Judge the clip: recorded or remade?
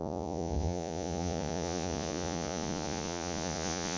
remade